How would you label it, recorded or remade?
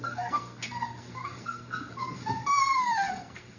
remade